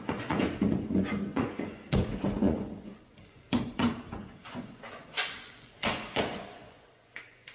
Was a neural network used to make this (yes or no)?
yes